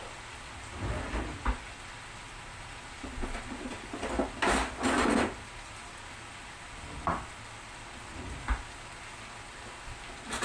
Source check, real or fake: real